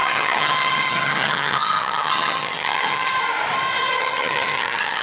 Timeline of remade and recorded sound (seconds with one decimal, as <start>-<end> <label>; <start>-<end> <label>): 0.0-3.1 remade; 3.1-4.0 recorded; 4.0-5.0 remade